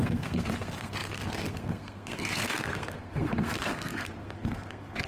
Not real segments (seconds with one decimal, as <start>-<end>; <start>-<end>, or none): 0.0-5.1